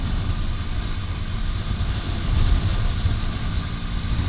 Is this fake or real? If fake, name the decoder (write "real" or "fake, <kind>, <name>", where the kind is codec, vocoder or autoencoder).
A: real